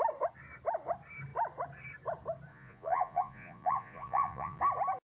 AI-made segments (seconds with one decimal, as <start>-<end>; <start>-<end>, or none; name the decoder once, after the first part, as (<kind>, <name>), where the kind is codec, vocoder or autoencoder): 2.5-4.6 (vocoder, Vocos)